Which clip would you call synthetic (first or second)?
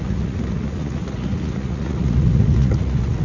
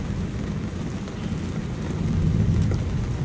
first